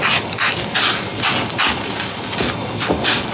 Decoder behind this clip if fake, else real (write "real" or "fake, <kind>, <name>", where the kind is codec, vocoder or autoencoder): real